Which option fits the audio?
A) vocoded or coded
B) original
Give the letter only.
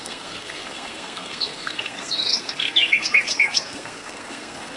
A